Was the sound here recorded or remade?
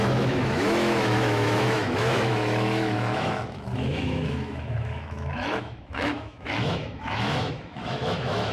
remade